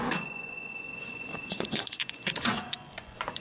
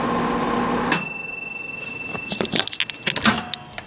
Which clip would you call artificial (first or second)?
first